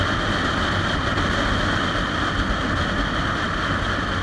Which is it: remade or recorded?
recorded